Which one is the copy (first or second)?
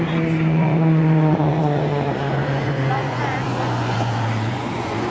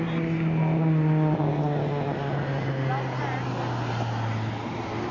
first